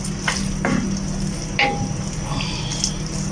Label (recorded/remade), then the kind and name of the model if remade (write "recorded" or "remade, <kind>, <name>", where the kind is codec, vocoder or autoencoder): recorded